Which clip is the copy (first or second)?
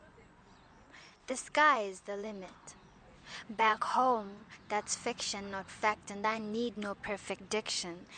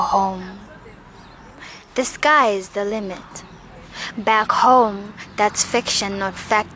first